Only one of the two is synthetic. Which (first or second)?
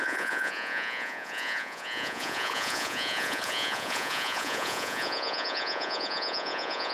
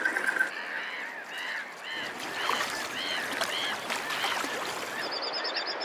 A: first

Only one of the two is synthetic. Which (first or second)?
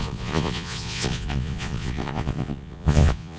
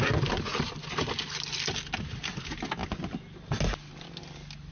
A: first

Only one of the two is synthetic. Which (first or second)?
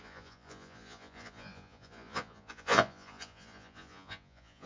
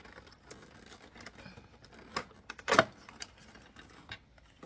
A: first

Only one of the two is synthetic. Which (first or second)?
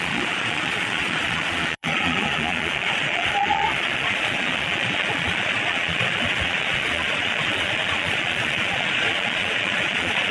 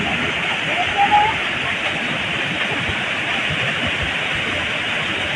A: first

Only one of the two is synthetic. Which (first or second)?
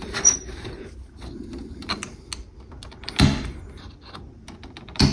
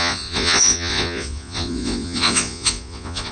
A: second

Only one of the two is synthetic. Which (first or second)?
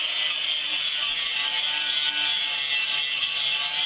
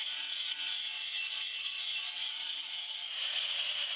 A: second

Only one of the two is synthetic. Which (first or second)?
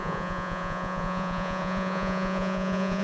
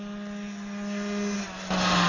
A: first